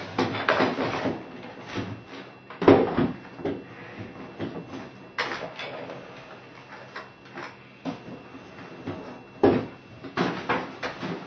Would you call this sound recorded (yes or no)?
yes